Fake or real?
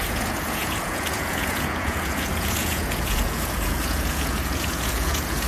fake